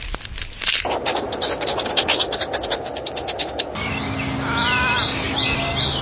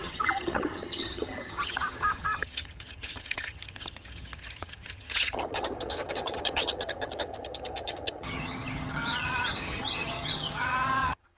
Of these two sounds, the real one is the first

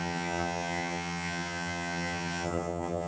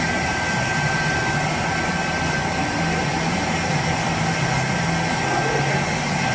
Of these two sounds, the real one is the second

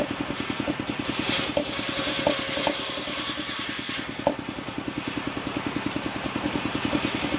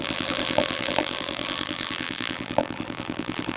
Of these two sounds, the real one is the first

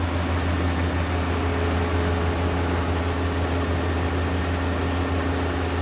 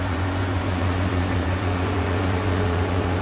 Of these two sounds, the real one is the first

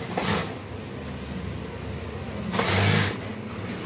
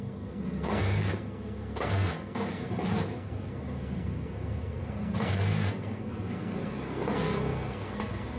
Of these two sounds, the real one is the first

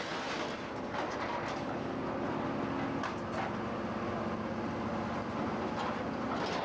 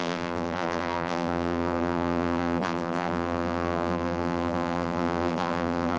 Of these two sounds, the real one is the first